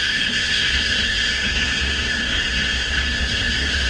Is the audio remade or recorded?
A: remade